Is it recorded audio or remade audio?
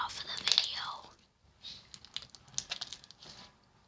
recorded